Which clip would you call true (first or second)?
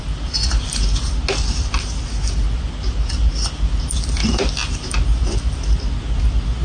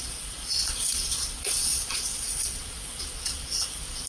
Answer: first